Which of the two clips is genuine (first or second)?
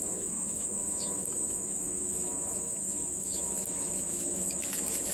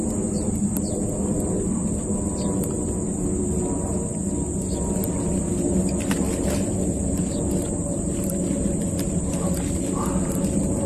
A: second